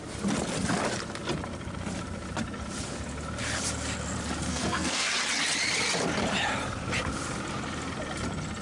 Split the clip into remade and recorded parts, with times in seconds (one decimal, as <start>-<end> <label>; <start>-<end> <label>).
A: 0.0-4.5 recorded; 4.5-5.1 remade; 5.1-8.6 recorded